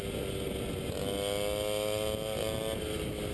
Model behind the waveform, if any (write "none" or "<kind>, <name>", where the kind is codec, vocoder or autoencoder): none